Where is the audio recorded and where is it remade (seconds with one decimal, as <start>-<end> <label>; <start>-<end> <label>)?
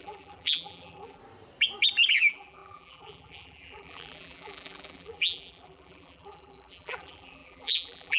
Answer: 0.0-1.2 remade; 1.2-2.1 recorded; 2.1-8.2 remade